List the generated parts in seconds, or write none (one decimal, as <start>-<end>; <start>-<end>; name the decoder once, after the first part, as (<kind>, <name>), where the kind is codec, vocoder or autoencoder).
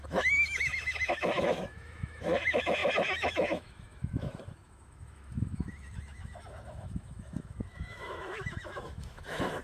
0.0-9.6 (autoencoder, DAC-VAE)